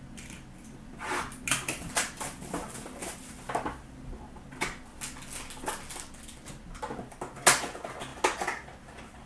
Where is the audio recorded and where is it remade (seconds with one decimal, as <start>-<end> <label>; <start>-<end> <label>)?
0.0-9.3 recorded